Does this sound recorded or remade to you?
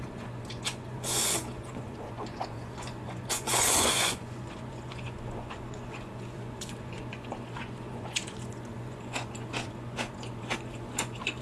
remade